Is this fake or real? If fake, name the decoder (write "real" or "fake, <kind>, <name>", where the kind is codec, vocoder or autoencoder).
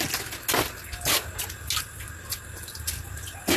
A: real